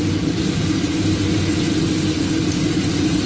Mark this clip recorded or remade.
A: recorded